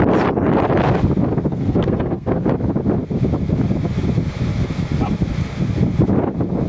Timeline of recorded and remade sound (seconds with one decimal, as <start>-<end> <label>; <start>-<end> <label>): 0.0-1.5 recorded; 1.5-2.4 remade; 2.4-6.7 recorded